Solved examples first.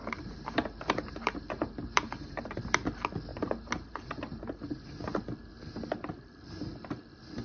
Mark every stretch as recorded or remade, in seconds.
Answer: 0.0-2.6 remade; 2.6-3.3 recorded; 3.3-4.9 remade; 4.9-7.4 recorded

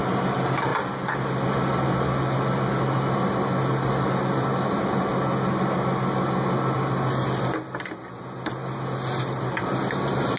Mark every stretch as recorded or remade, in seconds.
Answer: 0.0-10.4 recorded

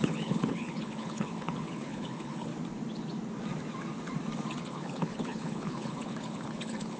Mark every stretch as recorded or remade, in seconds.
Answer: 0.0-2.5 remade; 2.5-4.6 recorded; 4.6-7.0 remade

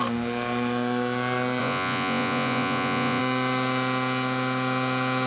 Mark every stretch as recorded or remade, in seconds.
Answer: 0.0-1.6 recorded; 1.6-3.2 remade; 3.2-5.3 recorded

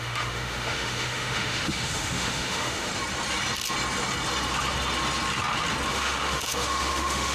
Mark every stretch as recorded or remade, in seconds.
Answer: 0.0-2.9 remade; 2.9-5.9 recorded; 5.9-7.3 remade

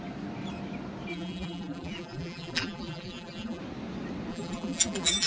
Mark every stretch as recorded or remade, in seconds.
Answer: 0.0-1.1 recorded; 1.1-3.6 remade; 3.6-4.3 recorded; 4.3-5.3 remade

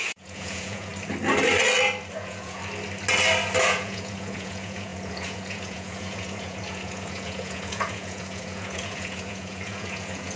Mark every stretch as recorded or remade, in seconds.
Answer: 0.0-0.9 remade; 0.9-2.1 recorded; 2.1-2.6 remade; 2.6-3.6 recorded; 3.6-10.4 remade